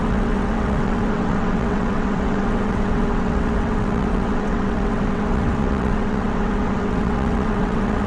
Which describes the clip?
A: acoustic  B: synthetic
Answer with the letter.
B